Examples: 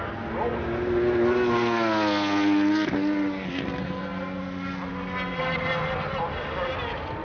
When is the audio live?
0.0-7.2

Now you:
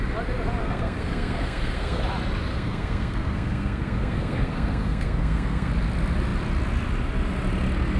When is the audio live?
0.0-0.6; 2.0-2.5; 5.7-8.0

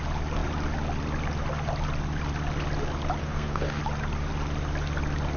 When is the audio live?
0.0-3.2; 3.8-5.4

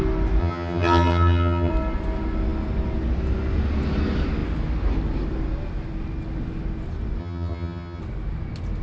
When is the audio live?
0.0-0.4; 1.7-7.2; 8.0-8.8

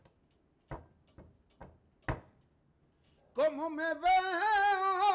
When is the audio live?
0.0-5.1

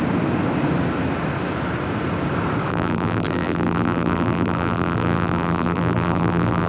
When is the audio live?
0.0-2.7